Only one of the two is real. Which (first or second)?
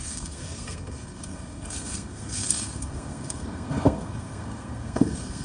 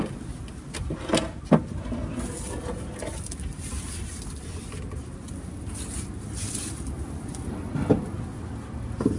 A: second